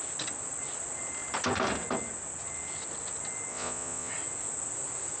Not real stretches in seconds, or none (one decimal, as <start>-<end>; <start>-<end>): 3.5-4.1